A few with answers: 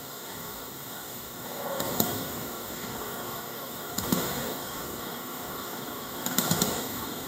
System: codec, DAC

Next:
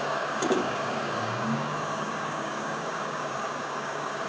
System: codec, DAC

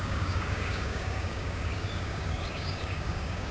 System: codec, DAC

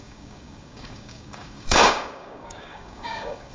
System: codec, DAC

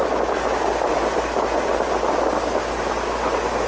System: none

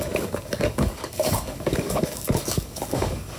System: codec, DAC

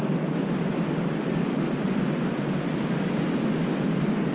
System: none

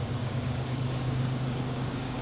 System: codec, DAC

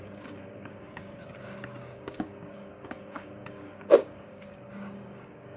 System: codec, DAC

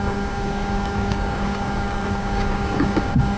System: codec, DAC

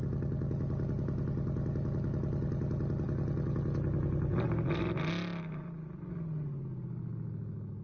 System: none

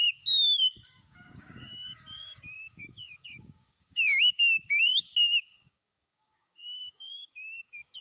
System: codec, DAC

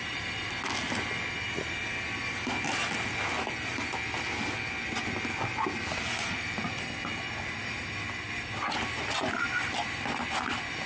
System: none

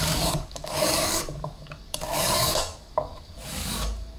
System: codec, DAC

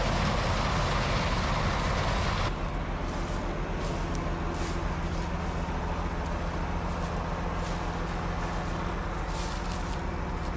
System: none